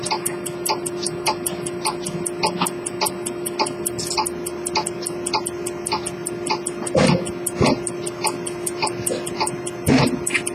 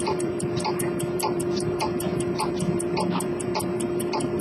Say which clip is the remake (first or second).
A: second